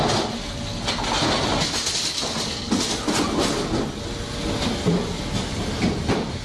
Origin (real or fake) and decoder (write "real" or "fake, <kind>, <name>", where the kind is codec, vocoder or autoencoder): real